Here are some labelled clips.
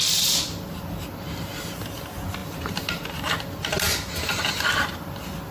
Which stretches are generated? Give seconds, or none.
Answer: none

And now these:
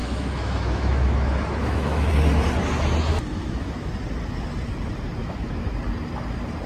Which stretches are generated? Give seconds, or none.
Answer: 0.0-2.1 (autoencoder, DAC-VAE); 3.1-3.9; 5.2-5.7